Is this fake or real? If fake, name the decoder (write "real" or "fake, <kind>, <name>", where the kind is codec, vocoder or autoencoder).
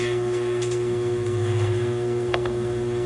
fake, codec, SNAC